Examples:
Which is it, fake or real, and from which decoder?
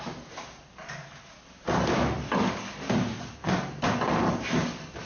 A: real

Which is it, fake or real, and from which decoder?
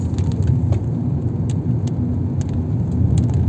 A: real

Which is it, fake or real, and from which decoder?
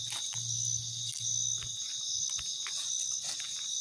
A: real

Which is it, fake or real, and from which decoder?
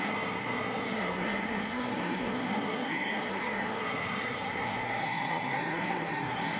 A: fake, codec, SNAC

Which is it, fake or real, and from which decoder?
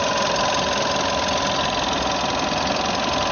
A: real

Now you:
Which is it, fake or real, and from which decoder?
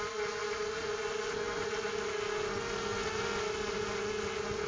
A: real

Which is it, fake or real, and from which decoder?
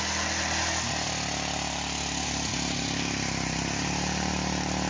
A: real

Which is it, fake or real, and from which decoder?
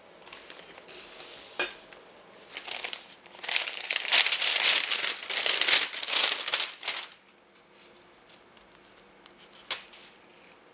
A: real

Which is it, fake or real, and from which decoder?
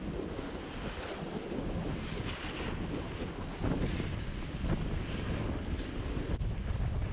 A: real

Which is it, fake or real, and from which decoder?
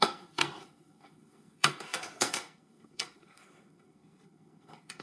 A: fake, codec, SNAC